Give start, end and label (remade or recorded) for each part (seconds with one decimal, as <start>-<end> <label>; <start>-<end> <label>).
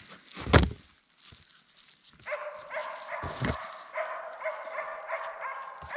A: 0.0-6.0 recorded